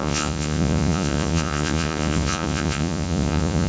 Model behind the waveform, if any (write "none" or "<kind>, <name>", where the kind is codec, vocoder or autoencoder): vocoder, Vocos